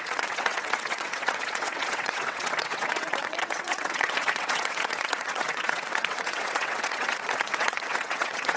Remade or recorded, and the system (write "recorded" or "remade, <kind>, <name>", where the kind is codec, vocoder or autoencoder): remade, vocoder, WaveNeXt